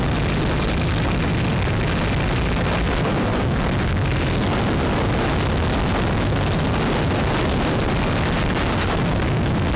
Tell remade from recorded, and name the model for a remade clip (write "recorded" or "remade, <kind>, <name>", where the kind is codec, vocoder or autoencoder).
recorded